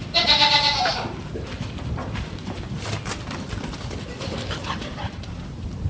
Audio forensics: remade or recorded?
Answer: recorded